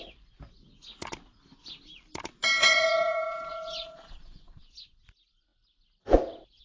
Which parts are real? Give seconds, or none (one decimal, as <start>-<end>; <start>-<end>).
0.0-2.6; 4.6-6.6